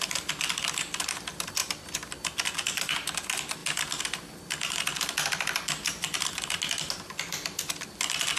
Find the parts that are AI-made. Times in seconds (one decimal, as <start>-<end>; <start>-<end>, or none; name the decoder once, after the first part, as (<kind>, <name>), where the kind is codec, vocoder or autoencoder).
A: none